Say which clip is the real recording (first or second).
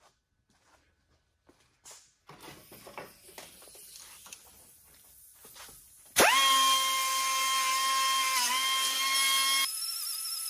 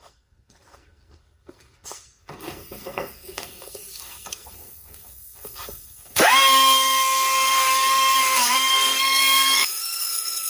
first